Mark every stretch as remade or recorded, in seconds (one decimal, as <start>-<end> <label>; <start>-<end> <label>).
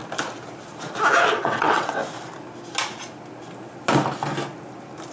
0.0-1.3 recorded; 1.3-2.0 remade; 2.0-5.1 recorded